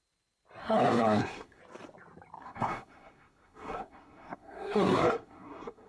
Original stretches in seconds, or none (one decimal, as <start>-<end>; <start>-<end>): 0.0-0.6; 1.6-2.4